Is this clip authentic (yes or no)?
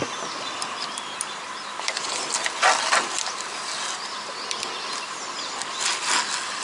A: yes